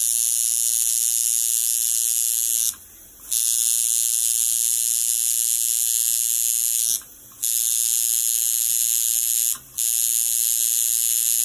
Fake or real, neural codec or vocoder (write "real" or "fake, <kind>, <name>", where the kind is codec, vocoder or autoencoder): real